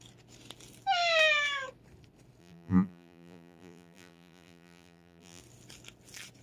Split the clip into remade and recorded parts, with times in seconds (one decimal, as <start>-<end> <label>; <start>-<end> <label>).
0.0-2.4 recorded; 2.4-5.4 remade; 5.4-6.4 recorded